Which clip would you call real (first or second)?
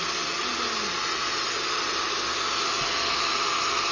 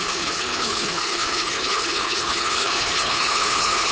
first